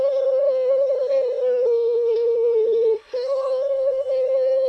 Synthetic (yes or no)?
yes